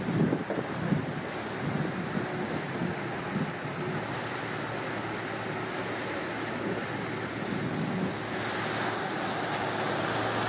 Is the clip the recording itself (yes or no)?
yes